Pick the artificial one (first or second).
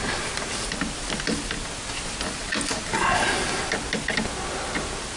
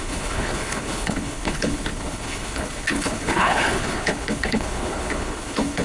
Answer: second